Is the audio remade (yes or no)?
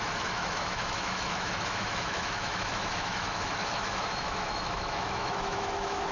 yes